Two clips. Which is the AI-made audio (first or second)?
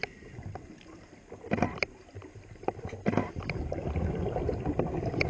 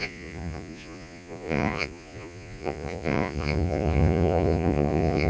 second